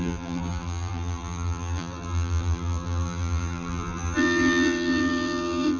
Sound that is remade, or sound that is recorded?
remade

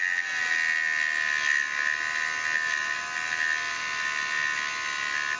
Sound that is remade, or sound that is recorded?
recorded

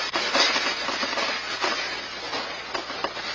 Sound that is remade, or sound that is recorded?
recorded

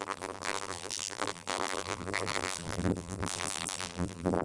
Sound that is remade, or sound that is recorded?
remade